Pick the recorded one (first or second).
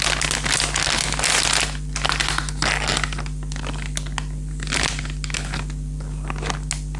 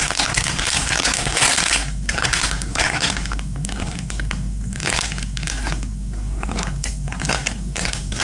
first